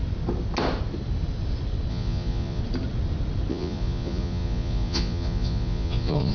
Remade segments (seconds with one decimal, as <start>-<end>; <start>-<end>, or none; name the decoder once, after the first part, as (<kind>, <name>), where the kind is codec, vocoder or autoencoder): 1.9-2.6 (vocoder, Vocos); 3.5-6.3